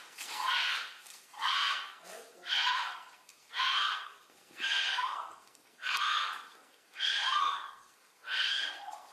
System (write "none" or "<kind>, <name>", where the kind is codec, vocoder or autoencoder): codec, SNAC